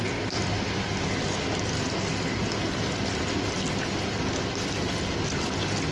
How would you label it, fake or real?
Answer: real